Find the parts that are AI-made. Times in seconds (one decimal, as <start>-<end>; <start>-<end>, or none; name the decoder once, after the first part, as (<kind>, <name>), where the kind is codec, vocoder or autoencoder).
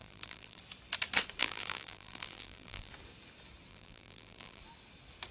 0.0-0.6 (vocoder, BigVGAN v2); 1.4-2.9; 3.7-4.6